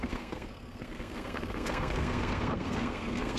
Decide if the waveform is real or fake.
fake